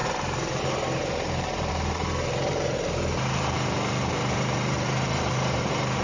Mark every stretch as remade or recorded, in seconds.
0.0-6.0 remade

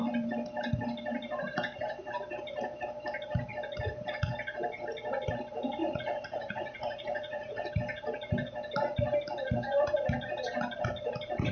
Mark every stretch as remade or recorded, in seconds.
0.0-5.8 recorded; 5.8-7.7 remade; 7.7-11.5 recorded

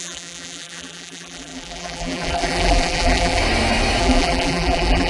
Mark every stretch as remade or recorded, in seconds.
0.0-3.4 remade; 3.4-4.0 recorded; 4.0-5.1 remade

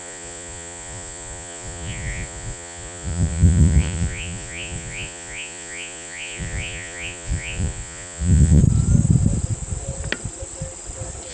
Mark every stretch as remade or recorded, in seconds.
0.0-8.6 remade; 8.6-11.3 recorded

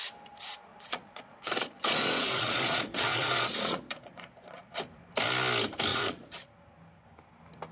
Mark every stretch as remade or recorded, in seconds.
0.0-0.7 recorded; 0.7-4.8 remade; 4.8-5.9 recorded; 5.9-6.5 remade; 6.5-7.7 recorded

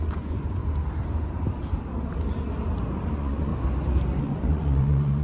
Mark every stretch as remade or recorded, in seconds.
0.0-0.6 remade; 0.6-3.1 recorded; 3.1-3.5 remade; 3.5-4.2 recorded; 4.2-5.2 remade

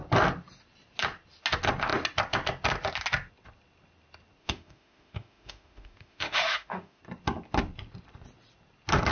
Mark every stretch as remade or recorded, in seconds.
0.0-4.4 recorded; 4.4-7.0 remade; 7.0-9.1 recorded